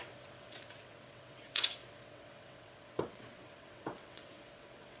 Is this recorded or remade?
remade